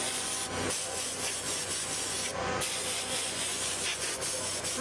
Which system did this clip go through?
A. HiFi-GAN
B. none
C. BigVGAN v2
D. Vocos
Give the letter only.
D